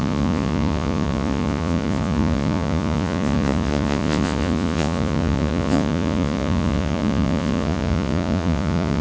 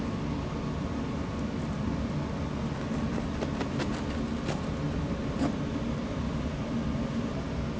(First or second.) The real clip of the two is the second